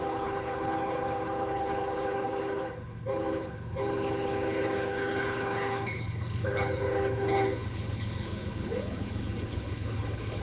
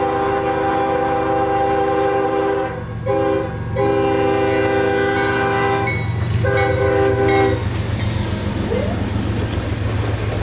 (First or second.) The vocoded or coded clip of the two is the first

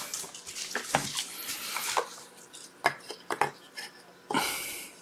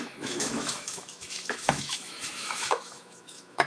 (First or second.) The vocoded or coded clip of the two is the second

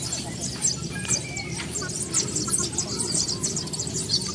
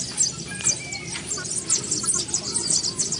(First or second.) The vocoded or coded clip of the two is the first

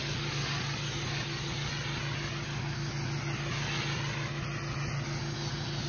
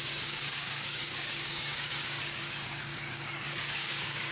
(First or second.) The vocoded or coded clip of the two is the second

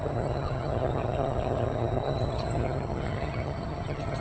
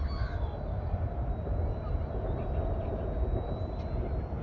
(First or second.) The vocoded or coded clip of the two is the first